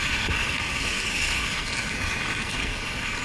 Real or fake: fake